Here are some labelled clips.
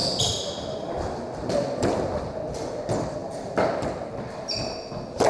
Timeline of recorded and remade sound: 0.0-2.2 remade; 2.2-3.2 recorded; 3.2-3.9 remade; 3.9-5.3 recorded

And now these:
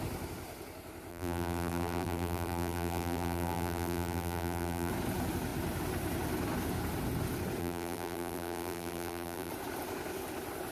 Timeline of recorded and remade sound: 0.0-1.1 recorded; 1.1-4.9 remade; 4.9-7.6 recorded; 7.6-9.5 remade; 9.5-10.7 recorded

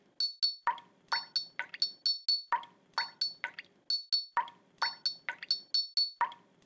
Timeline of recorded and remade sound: 0.0-6.7 recorded

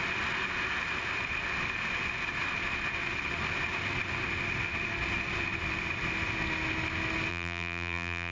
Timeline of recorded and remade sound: 0.0-7.3 recorded; 7.3-8.3 remade

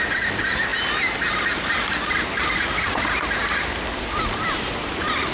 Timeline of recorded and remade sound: 0.0-5.3 recorded

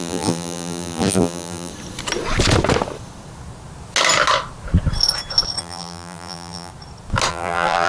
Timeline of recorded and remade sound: 0.0-1.7 remade; 1.7-5.6 recorded; 5.6-6.7 remade; 6.7-7.3 recorded; 7.3-7.9 remade